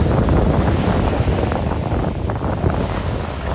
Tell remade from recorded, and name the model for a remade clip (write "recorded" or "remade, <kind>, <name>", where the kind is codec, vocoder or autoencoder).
recorded